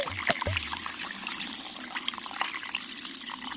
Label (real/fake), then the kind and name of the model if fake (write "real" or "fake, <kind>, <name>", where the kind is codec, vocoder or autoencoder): real